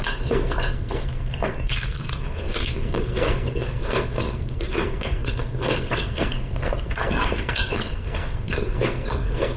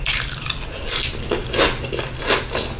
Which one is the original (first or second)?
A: second